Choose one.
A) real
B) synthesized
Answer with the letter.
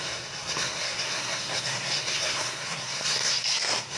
B